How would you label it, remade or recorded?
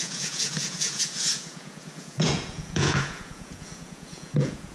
remade